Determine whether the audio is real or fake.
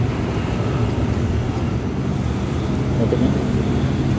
real